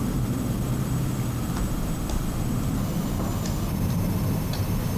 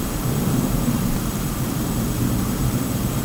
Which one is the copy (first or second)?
second